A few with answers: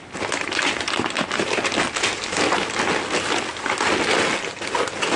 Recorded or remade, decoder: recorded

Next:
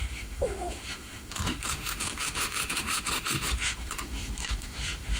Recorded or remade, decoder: remade, autoencoder, DAC-VAE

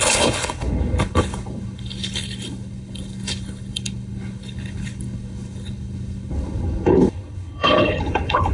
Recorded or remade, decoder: remade, codec, HILCodec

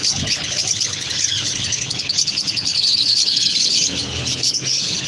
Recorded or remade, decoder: remade, codec, HILCodec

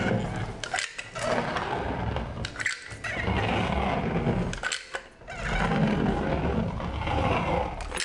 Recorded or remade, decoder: recorded